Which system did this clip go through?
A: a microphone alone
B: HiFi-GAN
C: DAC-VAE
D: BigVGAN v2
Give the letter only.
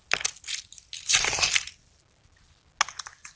A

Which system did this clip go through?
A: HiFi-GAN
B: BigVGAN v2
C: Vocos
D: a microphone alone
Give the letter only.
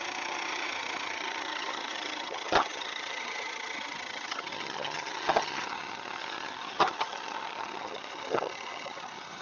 A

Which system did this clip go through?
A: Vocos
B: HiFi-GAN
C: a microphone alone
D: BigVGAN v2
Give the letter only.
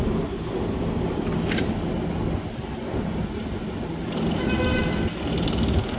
C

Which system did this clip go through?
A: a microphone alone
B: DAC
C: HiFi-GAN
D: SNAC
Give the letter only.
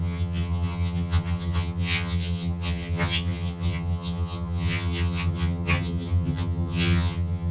C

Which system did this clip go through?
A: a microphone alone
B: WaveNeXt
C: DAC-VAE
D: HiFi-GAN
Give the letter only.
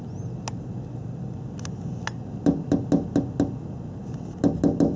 A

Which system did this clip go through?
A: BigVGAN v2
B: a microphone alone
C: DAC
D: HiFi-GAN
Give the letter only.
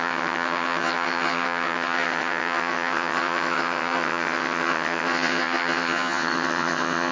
D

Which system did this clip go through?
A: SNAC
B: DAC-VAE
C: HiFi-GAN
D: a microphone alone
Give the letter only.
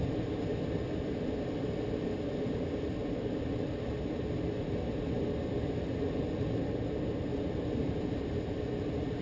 D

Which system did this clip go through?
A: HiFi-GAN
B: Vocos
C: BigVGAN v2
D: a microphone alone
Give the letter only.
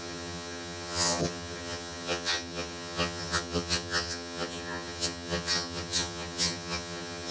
A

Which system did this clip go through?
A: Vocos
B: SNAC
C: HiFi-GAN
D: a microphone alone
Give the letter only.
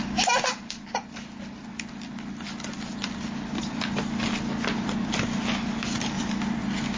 D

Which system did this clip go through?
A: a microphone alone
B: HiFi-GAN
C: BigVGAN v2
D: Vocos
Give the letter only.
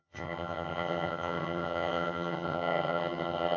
B